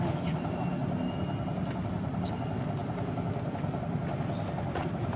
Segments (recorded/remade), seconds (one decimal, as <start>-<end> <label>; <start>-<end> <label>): 0.0-5.2 recorded